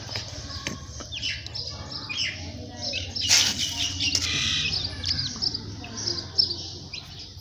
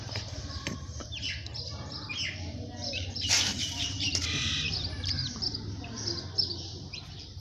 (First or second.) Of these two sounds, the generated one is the second